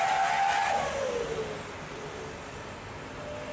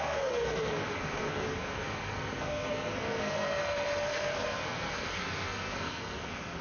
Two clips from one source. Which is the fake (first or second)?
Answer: second